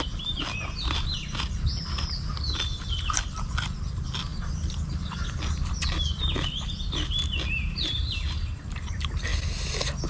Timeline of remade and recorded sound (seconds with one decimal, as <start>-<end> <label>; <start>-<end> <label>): 0.0-10.1 recorded